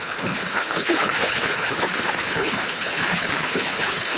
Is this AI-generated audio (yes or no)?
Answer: yes